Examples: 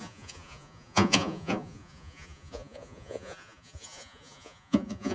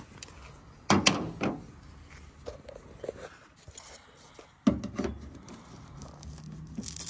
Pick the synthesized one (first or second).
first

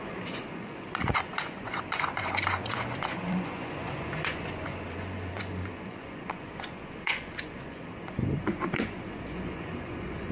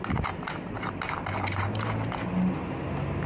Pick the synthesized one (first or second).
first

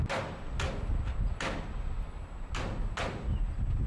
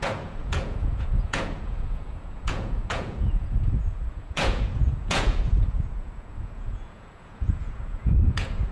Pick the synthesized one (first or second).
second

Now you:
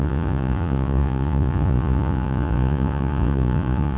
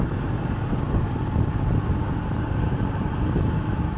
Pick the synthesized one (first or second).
first